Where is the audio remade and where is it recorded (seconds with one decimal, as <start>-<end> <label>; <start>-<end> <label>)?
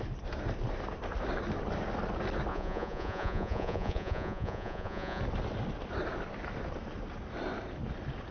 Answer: 0.0-2.5 recorded; 2.5-5.2 remade; 5.2-8.3 recorded